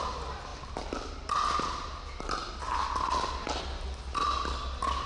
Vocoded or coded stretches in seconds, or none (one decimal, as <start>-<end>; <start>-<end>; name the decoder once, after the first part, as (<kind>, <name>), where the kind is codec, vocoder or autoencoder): none

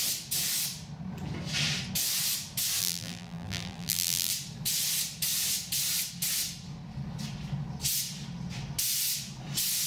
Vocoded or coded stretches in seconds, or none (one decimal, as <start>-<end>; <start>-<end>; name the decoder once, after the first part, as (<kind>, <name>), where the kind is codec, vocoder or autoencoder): 2.8-4.3 (vocoder, BigVGAN v2)

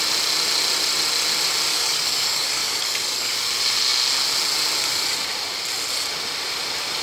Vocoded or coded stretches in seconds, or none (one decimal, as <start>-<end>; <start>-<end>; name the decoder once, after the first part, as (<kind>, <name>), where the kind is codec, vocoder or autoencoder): 1.7-3.5 (codec, DAC)

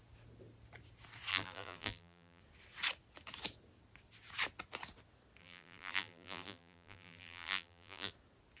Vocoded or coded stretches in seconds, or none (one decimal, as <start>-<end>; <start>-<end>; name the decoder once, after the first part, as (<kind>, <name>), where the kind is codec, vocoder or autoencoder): 1.3-2.4 (vocoder, BigVGAN v2); 5.4-8.1

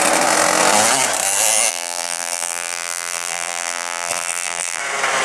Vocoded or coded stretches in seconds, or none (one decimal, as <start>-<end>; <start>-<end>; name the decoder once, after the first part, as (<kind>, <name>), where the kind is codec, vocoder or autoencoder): 1.7-4.8 (vocoder, BigVGAN v2)

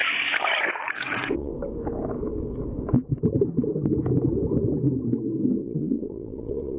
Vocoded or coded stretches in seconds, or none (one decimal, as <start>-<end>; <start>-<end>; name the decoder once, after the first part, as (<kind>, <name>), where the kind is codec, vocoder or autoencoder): 0.7-1.5 (vocoder, WaveNeXt); 5.6-6.8

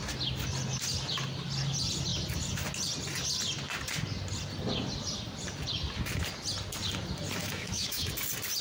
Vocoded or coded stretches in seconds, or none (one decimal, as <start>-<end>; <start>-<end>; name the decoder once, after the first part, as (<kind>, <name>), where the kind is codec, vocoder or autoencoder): 7.4-8.1 (autoencoder, DAC-VAE)